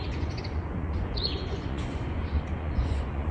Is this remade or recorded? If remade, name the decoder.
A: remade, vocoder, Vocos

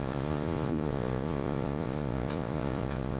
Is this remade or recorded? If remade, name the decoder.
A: remade, vocoder, Vocos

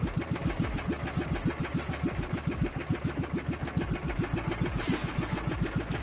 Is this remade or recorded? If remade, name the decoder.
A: recorded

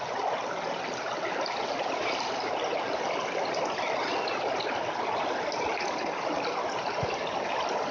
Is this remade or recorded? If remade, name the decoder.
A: recorded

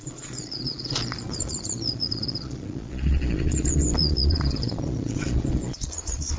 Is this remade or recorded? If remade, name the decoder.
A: remade, vocoder, Vocos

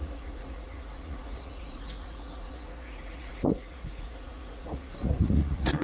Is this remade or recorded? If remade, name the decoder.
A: remade, vocoder, Vocos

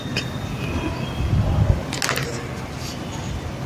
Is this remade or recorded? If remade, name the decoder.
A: recorded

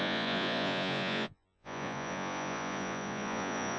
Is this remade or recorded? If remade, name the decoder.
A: remade, vocoder, Vocos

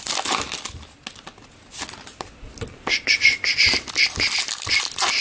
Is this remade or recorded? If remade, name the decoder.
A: recorded